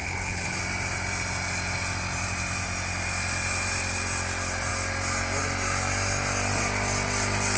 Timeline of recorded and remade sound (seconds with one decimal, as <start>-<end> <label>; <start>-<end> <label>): 0.0-0.6 remade; 0.6-7.6 recorded